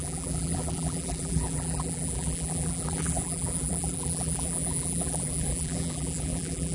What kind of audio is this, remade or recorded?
remade